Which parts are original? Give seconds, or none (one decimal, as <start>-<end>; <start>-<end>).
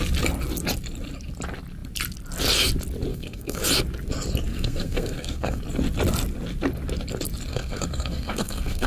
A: 0.0-3.1; 3.6-4.5; 5.6-7.5